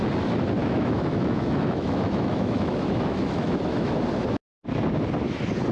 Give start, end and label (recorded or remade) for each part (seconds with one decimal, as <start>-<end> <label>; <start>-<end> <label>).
0.0-0.6 recorded; 0.6-4.0 remade; 4.0-5.7 recorded